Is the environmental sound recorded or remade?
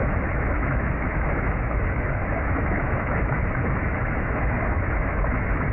remade